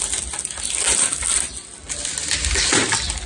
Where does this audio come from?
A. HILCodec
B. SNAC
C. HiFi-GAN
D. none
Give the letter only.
D